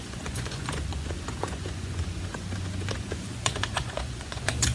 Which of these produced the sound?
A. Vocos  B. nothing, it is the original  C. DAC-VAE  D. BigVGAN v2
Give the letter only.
A